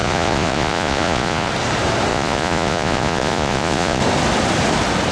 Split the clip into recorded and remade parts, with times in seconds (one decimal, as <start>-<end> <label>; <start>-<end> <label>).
0.0-1.5 remade; 1.5-2.1 recorded; 2.1-4.0 remade; 4.0-5.1 recorded

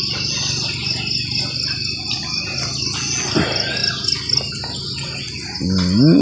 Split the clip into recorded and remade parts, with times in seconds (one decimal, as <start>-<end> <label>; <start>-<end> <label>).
0.0-6.2 recorded